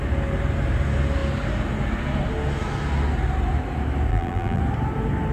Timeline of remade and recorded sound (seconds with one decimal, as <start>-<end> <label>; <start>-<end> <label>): 0.0-4.1 recorded; 4.1-4.6 remade; 4.6-5.3 recorded